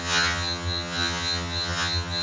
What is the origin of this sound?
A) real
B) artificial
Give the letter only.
B